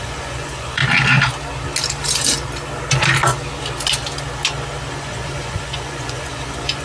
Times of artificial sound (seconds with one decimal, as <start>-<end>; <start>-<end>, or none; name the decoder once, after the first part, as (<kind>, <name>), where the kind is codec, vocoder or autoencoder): 0.0-0.8 (vocoder, Vocos); 4.9-6.8